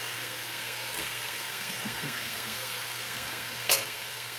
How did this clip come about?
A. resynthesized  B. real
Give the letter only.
A